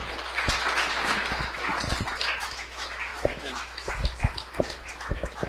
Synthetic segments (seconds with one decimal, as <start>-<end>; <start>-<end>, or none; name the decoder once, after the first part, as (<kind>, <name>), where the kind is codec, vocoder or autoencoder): 0.8-1.7 (autoencoder, DAC-VAE); 2.4-5.5